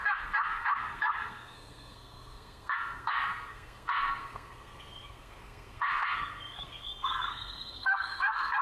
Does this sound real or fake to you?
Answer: fake